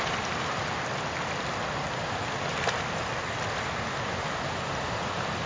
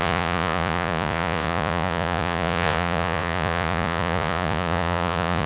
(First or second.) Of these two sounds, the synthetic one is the second